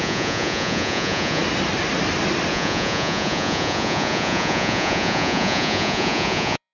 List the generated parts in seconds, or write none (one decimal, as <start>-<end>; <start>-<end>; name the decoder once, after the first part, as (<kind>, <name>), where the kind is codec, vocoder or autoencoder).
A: 0.0-1.4 (vocoder, Vocos); 2.5-6.7

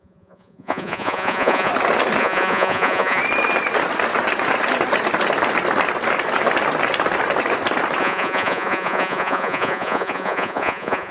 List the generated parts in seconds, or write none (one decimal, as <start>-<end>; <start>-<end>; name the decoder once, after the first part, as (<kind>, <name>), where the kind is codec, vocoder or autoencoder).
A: 0.0-1.7 (vocoder, Vocos); 2.2-3.2; 8.0-11.1

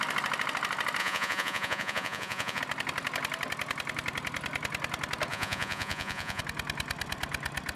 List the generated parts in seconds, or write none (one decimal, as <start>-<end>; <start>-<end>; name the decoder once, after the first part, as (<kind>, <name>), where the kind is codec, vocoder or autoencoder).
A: 1.0-2.6 (vocoder, Vocos); 5.3-6.4